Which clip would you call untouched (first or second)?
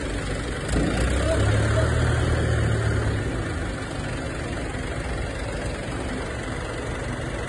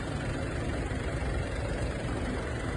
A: first